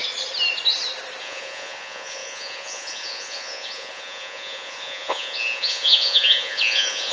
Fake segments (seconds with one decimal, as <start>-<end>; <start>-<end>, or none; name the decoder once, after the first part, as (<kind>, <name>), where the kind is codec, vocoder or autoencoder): 1.2-7.1 (vocoder, Vocos)